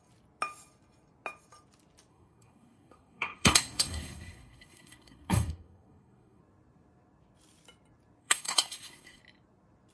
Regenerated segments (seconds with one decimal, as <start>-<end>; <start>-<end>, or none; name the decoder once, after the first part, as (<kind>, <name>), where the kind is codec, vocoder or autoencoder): 2.1-6.4 (codec, SNAC); 8.2-9.2